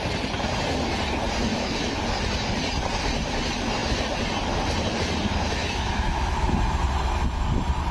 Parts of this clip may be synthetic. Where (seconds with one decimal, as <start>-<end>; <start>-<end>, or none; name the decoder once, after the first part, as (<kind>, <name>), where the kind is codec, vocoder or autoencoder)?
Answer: 1.5-2.0 (autoencoder, DAC-VAE); 5.6-6.5